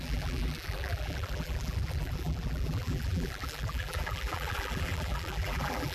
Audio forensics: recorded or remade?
remade